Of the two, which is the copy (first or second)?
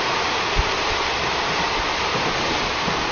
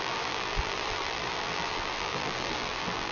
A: second